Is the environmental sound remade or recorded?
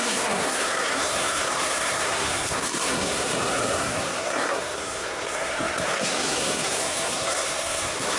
remade